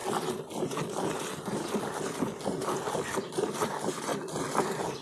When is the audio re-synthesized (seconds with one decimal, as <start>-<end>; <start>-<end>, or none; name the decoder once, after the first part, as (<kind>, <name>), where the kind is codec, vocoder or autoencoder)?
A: 3.0-4.1 (vocoder, BigVGAN v2)